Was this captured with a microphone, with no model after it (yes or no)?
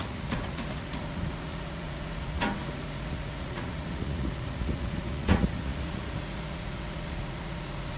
no